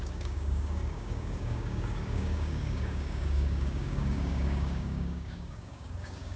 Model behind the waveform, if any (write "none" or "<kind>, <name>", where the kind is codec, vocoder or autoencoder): codec, DAC